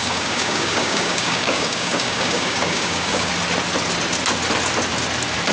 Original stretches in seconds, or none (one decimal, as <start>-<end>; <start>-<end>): 3.3-5.5